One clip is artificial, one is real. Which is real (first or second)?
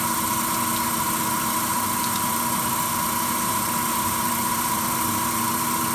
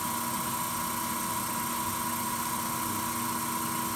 second